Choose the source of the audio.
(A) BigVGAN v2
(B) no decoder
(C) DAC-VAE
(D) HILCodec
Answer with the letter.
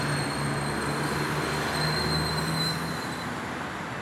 B